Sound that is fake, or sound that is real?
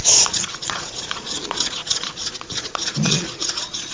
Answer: fake